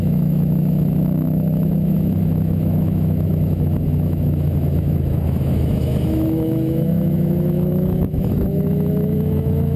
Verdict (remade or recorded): remade